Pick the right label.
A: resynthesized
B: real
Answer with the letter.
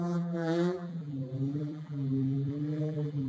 A